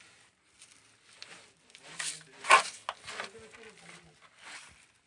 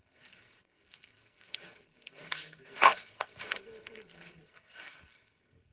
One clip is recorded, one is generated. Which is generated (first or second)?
second